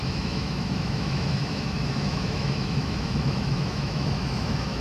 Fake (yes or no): yes